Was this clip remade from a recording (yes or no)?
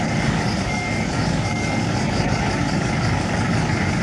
yes